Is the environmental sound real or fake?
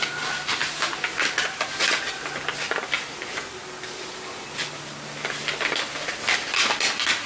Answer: real